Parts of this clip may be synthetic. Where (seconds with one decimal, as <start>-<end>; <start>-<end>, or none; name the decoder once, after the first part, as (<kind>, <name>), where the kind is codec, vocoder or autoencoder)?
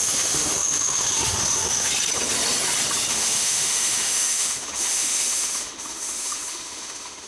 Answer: 0.0-1.9 (autoencoder, DAC-VAE); 3.1-7.3